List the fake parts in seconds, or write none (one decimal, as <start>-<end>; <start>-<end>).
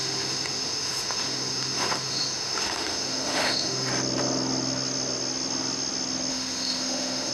0.0-3.9; 6.3-7.3